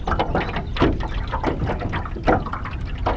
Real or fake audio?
real